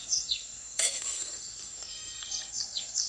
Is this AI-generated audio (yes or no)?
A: yes